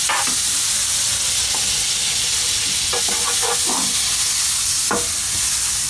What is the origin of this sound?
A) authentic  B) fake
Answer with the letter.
A